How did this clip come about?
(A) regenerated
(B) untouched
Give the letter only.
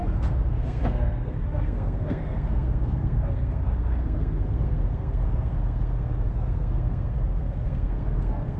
A